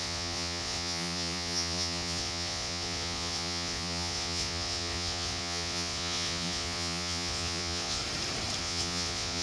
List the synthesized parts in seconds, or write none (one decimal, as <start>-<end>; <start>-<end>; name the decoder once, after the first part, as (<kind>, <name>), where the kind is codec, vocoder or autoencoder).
0.0-8.0 (vocoder, Vocos); 8.6-9.4